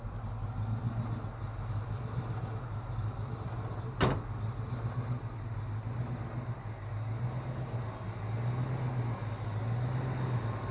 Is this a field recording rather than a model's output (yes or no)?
yes